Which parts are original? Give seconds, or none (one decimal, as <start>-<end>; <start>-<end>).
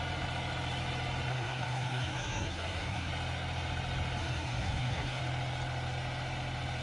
0.0-1.3; 3.1-4.2; 5.2-6.8